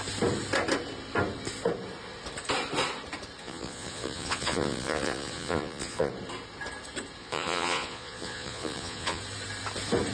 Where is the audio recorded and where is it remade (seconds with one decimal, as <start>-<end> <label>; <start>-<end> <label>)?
0.0-3.4 recorded; 3.4-6.1 remade; 6.1-7.2 recorded; 7.2-9.2 remade; 9.2-10.1 recorded